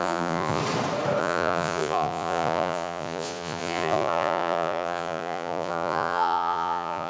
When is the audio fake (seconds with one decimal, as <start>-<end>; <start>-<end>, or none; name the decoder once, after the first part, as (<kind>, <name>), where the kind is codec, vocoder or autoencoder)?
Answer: 0.0-0.6 (vocoder, Vocos); 1.2-7.1